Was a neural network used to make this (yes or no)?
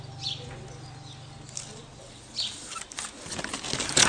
no